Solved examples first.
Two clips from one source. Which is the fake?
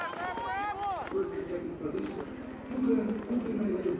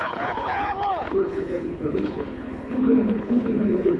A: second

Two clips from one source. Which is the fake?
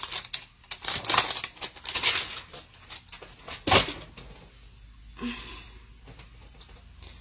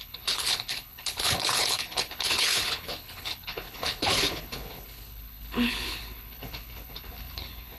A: second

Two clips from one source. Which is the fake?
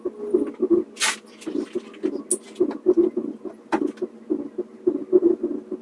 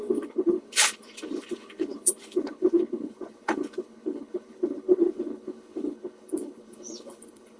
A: second